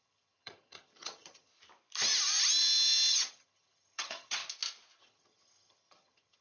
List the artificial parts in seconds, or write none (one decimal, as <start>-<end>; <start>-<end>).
0.0-1.5; 3.1-4.4; 5.0-6.4